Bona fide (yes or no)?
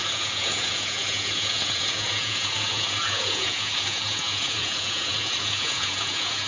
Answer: no